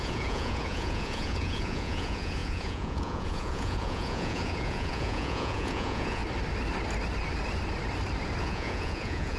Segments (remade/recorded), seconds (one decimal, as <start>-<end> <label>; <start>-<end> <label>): 0.0-6.2 remade; 6.2-8.4 recorded; 8.4-9.4 remade